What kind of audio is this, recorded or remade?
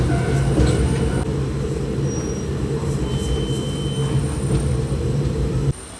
recorded